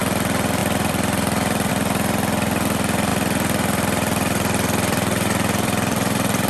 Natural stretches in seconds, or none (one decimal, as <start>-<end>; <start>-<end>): 0.0-0.6; 1.7-3.1

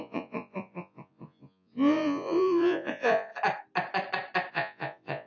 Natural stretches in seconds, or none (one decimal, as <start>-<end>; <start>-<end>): 3.3-4.5

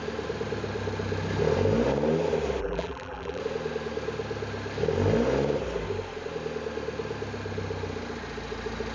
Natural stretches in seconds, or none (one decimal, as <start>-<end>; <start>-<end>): 0.0-2.6; 3.4-8.9

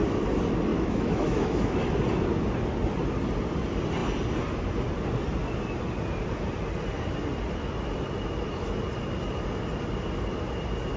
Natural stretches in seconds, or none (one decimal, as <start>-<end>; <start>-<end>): 0.0-0.7; 1.8-11.0

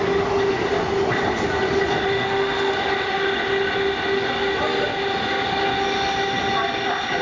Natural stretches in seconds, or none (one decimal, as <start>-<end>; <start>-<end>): 0.0-2.1; 2.7-7.2

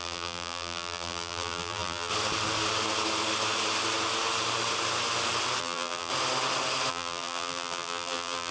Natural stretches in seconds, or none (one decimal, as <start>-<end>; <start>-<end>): 2.1-5.6; 6.1-6.9